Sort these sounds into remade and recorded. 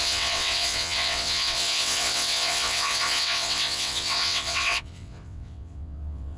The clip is remade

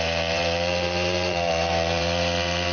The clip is remade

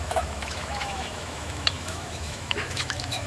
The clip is remade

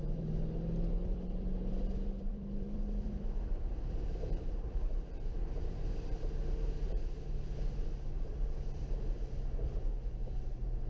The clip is remade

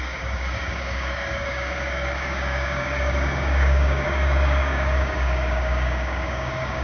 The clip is remade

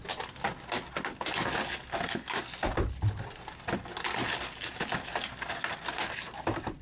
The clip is recorded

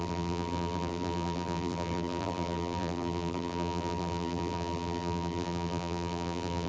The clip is remade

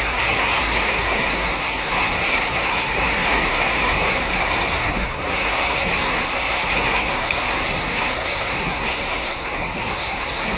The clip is remade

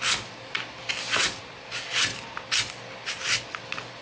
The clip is recorded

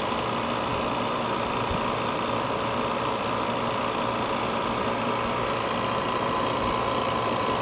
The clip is recorded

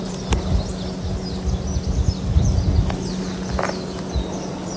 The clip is recorded